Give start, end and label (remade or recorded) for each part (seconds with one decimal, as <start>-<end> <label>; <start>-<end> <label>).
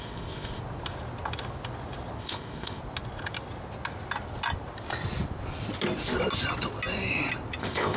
0.0-0.6 remade; 0.6-2.2 recorded; 2.2-2.8 remade; 2.8-7.6 recorded; 7.6-8.0 remade